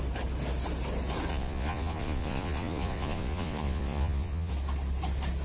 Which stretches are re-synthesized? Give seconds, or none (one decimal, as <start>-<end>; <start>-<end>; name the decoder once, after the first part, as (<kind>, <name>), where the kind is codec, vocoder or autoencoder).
1.3-4.5 (vocoder, Vocos)